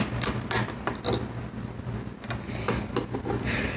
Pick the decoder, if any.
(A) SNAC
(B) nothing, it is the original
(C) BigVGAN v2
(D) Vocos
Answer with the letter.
B